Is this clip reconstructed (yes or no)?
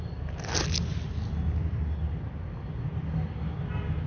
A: no